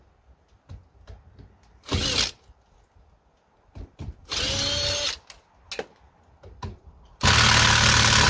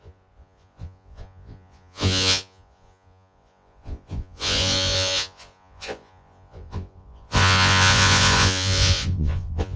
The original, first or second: first